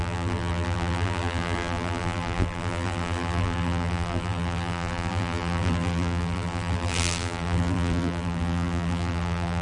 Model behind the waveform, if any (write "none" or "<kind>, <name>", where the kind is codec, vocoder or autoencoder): vocoder, BigVGAN v2